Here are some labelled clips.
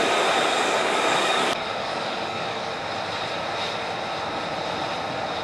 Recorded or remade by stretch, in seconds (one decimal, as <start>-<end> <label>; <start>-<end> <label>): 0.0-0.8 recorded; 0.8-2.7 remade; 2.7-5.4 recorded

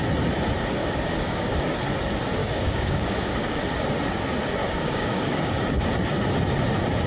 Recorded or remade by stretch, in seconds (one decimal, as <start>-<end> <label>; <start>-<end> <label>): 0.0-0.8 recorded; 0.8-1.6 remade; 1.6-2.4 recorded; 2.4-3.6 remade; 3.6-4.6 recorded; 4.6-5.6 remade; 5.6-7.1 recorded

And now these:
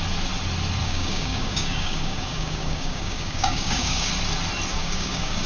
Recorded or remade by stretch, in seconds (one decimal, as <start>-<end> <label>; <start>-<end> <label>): 0.0-0.8 recorded; 0.8-4.1 remade; 4.1-4.7 recorded; 4.7-5.5 remade